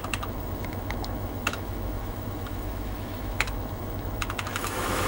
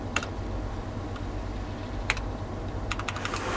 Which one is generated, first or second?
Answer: first